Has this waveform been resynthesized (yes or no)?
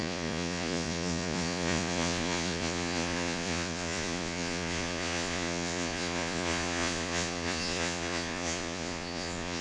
yes